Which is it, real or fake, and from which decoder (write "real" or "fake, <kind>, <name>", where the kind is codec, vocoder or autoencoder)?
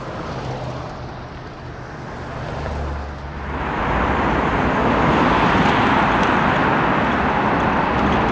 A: real